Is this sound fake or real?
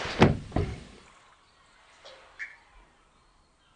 real